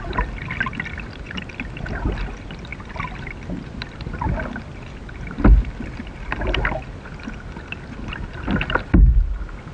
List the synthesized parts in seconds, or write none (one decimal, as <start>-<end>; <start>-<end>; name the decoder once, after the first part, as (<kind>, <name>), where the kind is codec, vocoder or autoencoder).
none